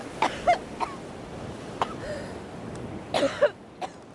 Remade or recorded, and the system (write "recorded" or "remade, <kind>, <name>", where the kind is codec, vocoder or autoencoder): recorded